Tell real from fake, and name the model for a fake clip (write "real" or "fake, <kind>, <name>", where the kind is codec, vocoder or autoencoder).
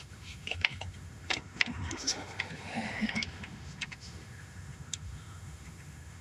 fake, autoencoder, DAC-VAE